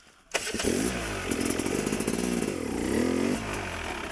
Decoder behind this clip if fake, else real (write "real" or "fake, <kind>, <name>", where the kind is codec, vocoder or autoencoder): real